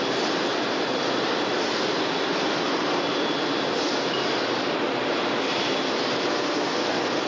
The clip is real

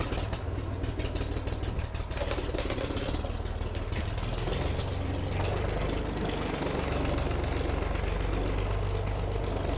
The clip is real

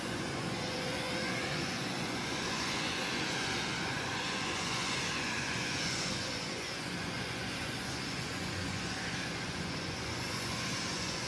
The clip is fake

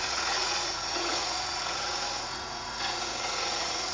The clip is fake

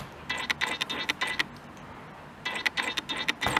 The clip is real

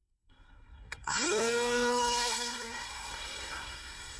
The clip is fake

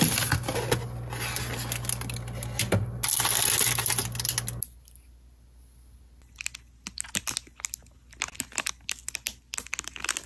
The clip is real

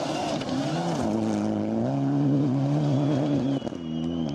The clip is real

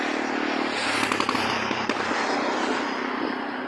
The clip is real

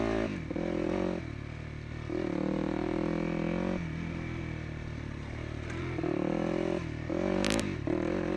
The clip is real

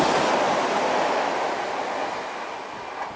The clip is real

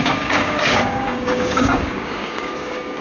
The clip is fake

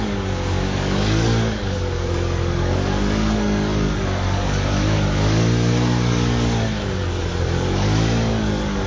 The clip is fake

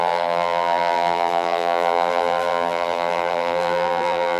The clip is fake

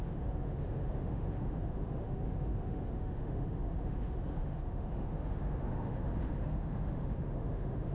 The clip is fake